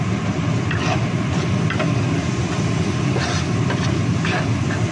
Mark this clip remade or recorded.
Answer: recorded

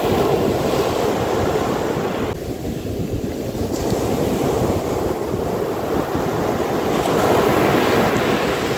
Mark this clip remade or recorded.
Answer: recorded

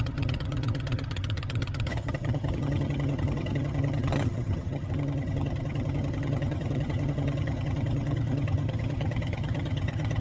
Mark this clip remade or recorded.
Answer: remade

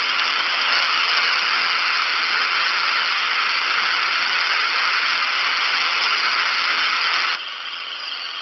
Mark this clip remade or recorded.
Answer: remade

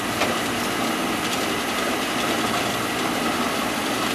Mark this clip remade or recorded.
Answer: remade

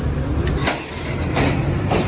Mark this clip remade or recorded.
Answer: recorded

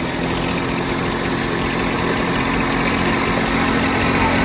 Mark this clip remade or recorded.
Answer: recorded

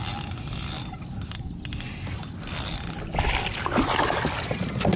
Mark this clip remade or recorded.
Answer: recorded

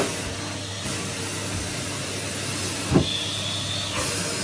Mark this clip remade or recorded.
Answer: recorded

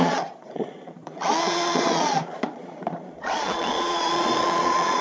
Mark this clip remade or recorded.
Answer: remade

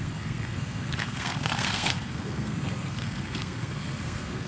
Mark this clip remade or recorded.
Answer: remade